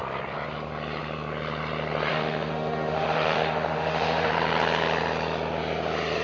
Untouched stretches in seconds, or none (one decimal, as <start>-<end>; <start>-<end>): 0.0-2.1; 4.3-6.2